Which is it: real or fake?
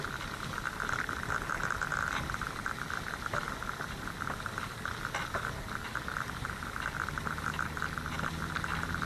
real